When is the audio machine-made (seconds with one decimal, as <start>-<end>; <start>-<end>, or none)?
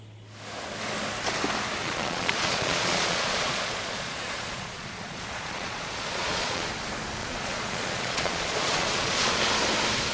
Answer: 1.8-6.7; 7.2-9.4